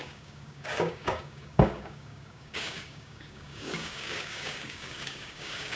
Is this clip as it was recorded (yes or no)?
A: no